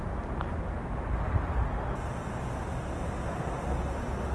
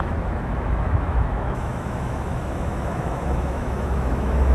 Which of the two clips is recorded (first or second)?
first